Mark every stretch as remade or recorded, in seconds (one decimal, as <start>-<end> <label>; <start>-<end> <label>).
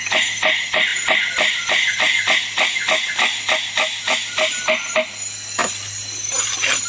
0.0-0.9 recorded; 0.9-2.2 remade; 2.2-3.9 recorded; 3.9-4.5 remade; 4.5-5.6 recorded; 5.6-6.9 remade